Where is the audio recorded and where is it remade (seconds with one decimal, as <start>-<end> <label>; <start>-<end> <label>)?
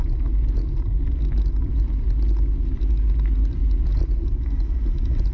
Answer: 0.0-5.3 recorded